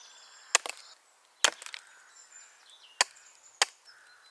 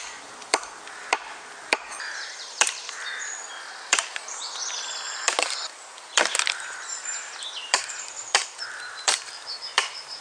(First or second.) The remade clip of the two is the second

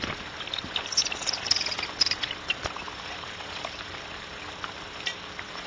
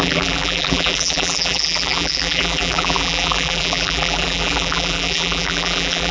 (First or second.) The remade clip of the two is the second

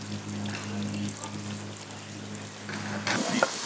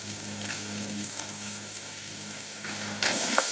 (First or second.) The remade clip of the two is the second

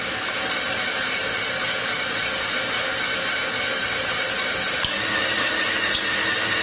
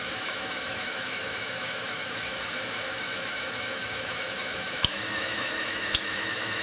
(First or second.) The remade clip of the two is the second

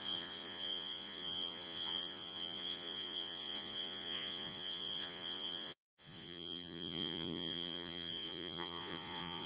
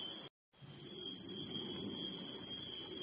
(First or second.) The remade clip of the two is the first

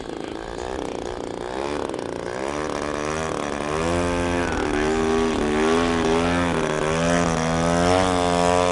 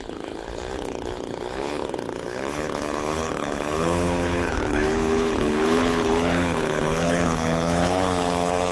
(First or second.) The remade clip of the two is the second